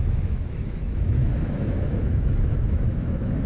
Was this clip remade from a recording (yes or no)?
yes